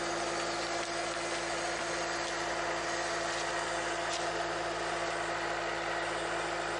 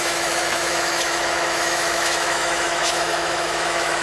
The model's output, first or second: second